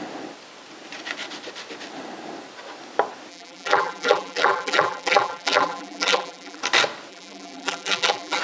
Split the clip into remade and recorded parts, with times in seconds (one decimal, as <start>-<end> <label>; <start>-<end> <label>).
0.0-3.3 recorded; 3.3-6.6 remade; 6.6-7.1 recorded; 7.1-8.4 remade